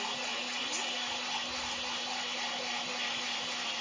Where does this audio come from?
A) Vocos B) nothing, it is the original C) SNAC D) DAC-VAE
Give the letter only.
B